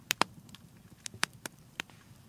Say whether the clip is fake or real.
fake